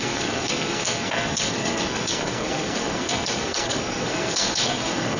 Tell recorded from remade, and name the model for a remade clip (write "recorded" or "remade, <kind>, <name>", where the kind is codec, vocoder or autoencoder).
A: remade, codec, SNAC